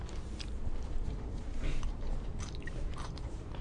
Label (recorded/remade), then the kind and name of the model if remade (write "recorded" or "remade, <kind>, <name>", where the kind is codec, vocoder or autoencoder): remade, vocoder, BigVGAN v2